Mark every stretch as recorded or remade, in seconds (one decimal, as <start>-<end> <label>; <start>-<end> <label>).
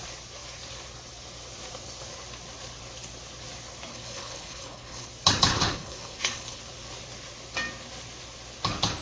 0.0-3.9 recorded; 3.9-5.1 remade; 5.1-5.5 recorded; 5.5-6.6 remade; 6.6-9.0 recorded